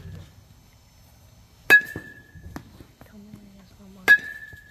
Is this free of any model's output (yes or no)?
yes